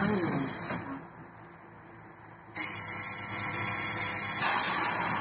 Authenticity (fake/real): real